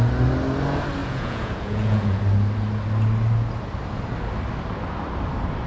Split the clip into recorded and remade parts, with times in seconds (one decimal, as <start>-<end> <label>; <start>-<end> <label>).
0.0-1.0 recorded; 1.0-2.2 remade; 2.2-5.7 recorded

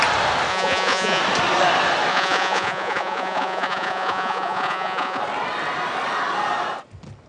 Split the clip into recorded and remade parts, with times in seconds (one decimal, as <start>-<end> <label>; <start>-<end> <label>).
0.0-0.5 recorded; 0.5-1.2 remade; 1.2-2.1 recorded; 2.1-5.2 remade; 5.2-7.3 recorded

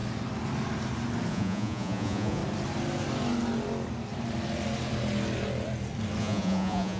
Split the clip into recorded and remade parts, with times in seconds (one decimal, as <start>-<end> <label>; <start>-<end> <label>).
0.0-1.3 recorded; 1.3-2.4 remade; 2.4-6.2 recorded; 6.2-7.0 remade